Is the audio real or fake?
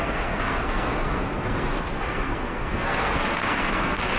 fake